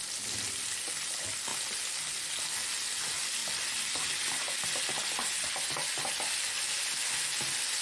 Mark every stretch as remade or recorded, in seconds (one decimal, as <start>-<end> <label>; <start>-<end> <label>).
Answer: 0.0-7.8 recorded